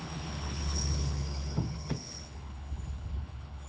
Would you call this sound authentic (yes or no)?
no